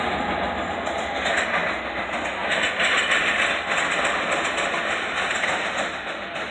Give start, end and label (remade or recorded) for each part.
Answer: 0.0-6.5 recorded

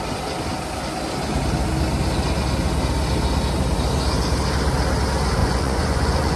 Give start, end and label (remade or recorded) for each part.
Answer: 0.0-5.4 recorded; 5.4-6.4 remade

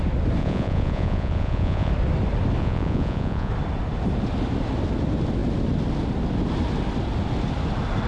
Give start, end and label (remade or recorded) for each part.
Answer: 0.0-0.4 recorded; 0.4-1.9 remade; 1.9-2.6 recorded; 2.6-3.5 remade; 3.5-8.1 recorded

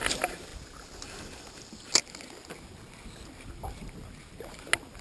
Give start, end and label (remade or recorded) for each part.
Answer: 0.0-5.0 recorded